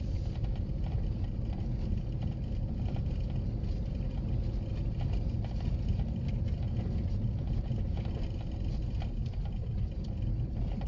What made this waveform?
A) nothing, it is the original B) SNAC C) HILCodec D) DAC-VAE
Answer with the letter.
A